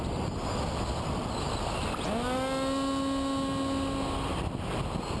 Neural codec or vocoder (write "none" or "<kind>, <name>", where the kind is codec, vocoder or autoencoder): none